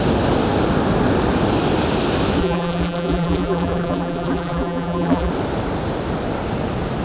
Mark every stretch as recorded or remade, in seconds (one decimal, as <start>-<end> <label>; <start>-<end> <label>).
0.0-2.4 recorded; 2.4-5.3 remade; 5.3-7.0 recorded

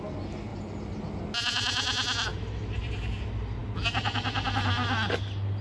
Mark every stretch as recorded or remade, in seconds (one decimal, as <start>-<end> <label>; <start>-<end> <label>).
0.0-2.3 recorded; 2.3-2.9 remade; 2.9-5.6 recorded

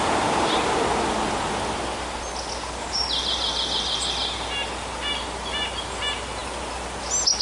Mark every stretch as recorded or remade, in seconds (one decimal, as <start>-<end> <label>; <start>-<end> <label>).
0.0-7.4 recorded

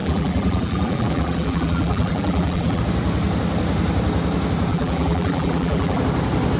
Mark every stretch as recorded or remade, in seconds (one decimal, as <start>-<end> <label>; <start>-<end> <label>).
0.0-2.8 remade; 2.8-4.7 recorded; 4.7-6.0 remade; 6.0-6.6 recorded

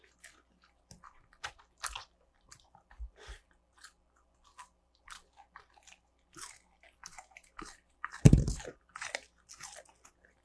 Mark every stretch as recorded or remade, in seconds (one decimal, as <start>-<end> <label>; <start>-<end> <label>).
0.0-10.4 recorded

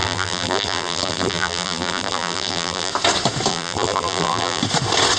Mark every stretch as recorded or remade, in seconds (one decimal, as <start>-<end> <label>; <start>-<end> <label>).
0.0-2.9 remade; 2.9-3.5 recorded; 3.5-4.6 remade; 4.6-5.2 recorded

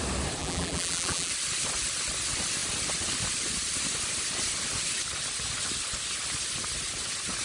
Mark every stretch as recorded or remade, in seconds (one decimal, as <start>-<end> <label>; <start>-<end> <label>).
0.0-0.4 recorded; 0.4-1.3 remade; 1.3-7.4 recorded